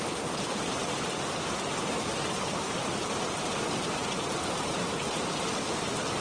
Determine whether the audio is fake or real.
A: fake